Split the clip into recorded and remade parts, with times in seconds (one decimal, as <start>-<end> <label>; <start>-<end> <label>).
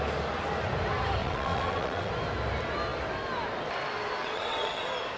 0.0-1.2 recorded; 1.2-2.1 remade; 2.1-4.2 recorded; 4.2-4.8 remade; 4.8-5.2 recorded